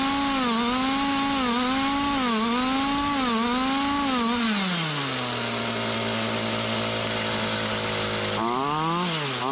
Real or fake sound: real